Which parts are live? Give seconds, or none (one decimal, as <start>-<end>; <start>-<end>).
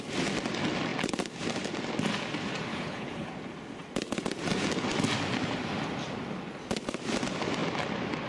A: 0.0-2.7; 3.3-8.3